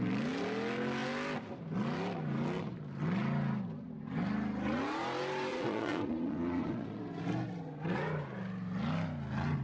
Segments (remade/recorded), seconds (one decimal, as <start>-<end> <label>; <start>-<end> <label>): 0.0-5.5 recorded; 5.5-7.0 remade; 7.0-9.6 recorded